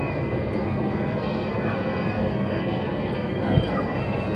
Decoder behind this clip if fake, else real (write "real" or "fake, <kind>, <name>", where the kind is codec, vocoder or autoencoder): fake, codec, SNAC